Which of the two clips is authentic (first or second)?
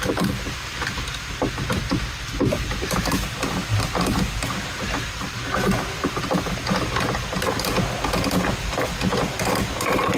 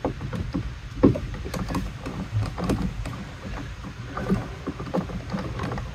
first